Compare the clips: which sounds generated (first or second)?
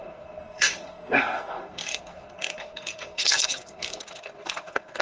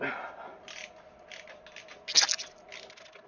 first